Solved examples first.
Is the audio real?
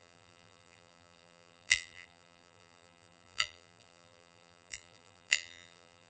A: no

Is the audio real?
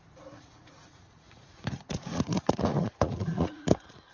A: no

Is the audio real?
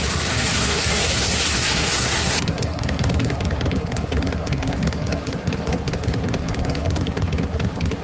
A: no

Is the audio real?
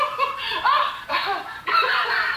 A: no